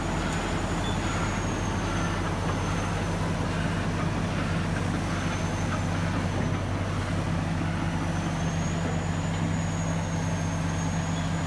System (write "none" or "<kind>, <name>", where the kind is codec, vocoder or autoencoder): none